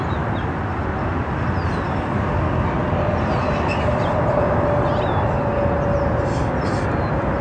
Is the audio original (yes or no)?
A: yes